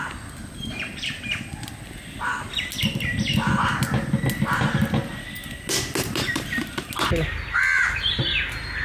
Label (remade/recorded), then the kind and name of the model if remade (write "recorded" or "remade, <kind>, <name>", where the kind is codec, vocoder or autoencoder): recorded